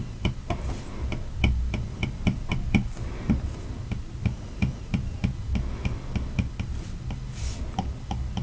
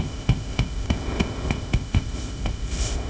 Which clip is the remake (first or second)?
second